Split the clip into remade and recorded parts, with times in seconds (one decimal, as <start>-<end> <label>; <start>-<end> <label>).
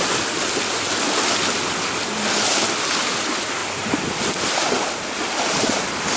0.0-6.2 recorded